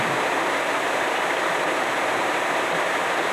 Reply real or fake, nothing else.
real